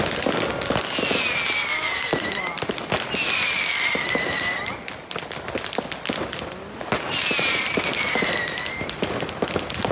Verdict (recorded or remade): recorded